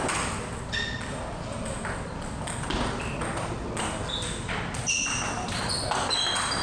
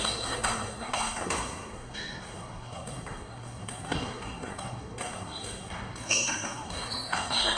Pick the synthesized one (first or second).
second